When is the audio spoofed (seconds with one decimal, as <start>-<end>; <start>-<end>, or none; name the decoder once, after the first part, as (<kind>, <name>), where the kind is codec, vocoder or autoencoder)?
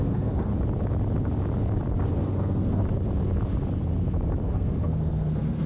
0.0-0.5 (codec, SNAC); 2.1-2.8; 4.4-5.7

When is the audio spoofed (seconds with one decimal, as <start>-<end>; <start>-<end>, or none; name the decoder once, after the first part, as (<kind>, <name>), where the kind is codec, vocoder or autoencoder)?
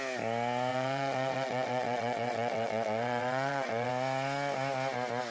0.7-3.9 (vocoder, WaveNeXt)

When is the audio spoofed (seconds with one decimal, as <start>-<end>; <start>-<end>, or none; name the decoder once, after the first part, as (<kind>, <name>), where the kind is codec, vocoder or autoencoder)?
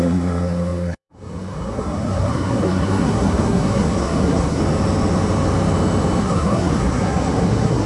0.0-4.6 (codec, SNAC); 6.2-7.9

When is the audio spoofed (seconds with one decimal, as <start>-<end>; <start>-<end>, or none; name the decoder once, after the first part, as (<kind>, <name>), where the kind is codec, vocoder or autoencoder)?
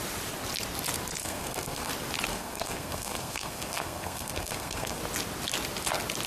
1.2-1.9 (codec, SNAC); 2.3-5.0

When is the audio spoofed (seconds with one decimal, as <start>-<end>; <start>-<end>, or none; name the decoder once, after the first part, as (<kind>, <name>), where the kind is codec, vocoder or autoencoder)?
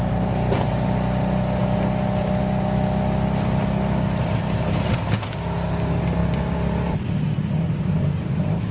none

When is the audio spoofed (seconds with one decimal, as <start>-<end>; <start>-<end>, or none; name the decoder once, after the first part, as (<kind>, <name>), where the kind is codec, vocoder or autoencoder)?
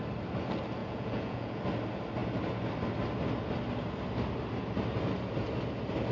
0.8-1.6 (vocoder, Vocos)